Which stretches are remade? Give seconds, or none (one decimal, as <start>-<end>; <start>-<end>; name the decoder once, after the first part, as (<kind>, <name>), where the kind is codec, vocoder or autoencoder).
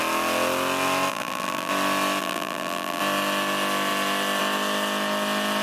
1.1-1.7 (vocoder, BigVGAN v2); 2.2-3.0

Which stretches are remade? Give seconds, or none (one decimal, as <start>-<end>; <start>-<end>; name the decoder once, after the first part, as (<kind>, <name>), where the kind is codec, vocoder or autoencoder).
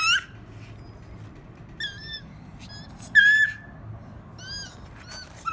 2.0-2.6 (vocoder, BigVGAN v2)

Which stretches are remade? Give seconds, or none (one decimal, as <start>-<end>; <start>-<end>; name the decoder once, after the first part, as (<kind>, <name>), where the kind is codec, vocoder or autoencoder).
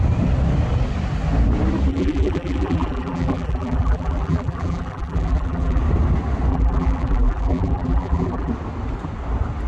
1.9-5.8 (vocoder, BigVGAN v2); 6.5-8.5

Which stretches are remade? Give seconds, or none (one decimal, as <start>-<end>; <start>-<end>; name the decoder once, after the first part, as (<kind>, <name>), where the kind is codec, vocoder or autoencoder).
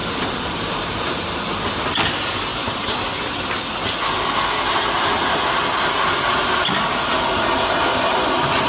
0.0-1.3 (vocoder, BigVGAN v2)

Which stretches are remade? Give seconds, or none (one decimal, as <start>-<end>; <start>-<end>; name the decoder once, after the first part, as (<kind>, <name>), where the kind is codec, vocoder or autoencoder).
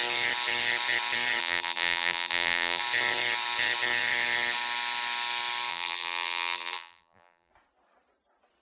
1.4-2.8 (vocoder, BigVGAN v2); 5.7-7.5